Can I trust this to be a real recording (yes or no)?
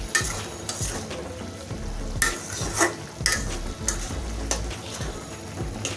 yes